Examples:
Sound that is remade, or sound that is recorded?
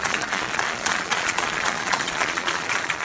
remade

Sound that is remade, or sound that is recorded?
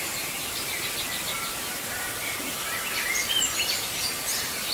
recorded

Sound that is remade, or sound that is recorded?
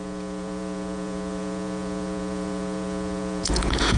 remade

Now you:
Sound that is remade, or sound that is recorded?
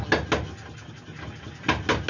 recorded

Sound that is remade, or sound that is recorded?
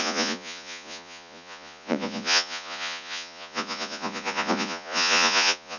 remade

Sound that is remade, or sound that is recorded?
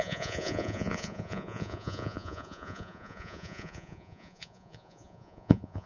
remade